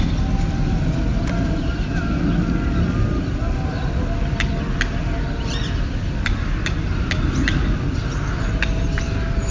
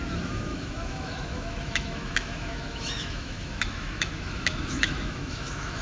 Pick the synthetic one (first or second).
second